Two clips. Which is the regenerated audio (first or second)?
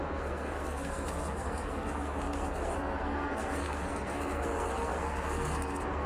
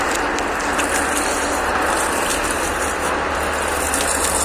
first